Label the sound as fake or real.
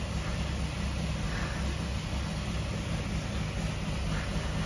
real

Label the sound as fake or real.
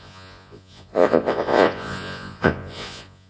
fake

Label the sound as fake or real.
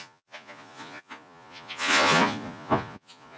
fake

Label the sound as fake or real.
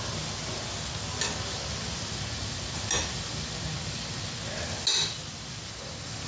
real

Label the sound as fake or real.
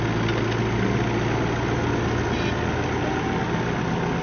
real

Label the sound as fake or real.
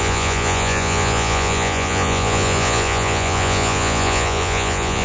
fake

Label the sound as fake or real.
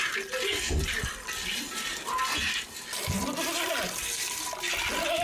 real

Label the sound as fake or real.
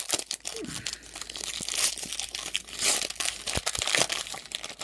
real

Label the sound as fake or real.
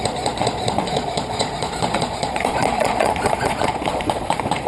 fake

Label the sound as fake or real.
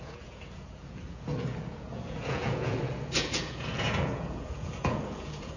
fake